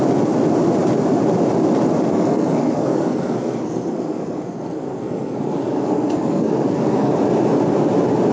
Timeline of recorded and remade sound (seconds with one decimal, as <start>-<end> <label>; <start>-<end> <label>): 0.0-2.1 recorded; 2.1-7.1 remade; 7.1-8.3 recorded